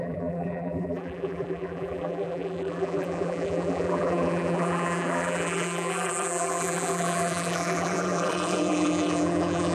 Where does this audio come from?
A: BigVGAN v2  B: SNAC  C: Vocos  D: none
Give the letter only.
A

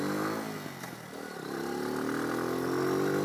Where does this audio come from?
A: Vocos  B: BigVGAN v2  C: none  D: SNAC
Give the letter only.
C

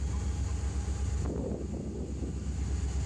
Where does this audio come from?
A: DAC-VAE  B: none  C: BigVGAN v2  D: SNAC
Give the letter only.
B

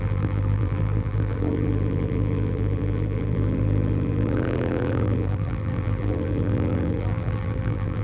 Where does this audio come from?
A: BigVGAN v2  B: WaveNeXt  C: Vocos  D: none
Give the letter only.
A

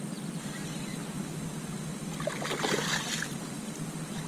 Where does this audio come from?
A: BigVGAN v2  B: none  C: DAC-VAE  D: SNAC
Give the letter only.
B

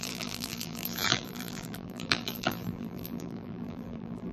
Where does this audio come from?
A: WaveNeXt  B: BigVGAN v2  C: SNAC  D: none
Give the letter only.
B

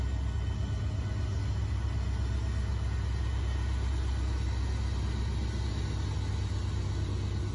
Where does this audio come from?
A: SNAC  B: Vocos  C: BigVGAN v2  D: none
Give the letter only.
D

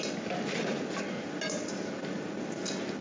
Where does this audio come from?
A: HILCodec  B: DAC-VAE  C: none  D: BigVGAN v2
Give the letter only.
C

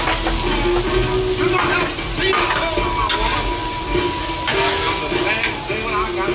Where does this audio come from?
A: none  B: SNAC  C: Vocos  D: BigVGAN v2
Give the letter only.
A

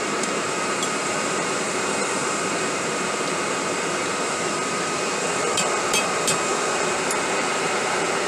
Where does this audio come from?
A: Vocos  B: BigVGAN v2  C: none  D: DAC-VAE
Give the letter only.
B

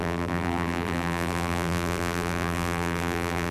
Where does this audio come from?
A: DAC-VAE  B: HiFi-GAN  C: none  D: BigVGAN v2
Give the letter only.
D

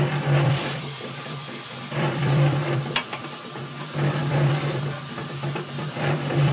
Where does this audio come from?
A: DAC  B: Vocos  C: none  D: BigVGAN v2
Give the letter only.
D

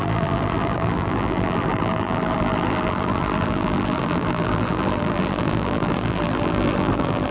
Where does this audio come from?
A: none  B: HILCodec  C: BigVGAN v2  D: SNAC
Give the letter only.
C